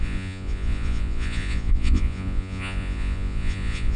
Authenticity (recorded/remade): remade